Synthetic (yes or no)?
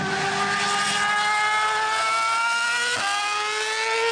no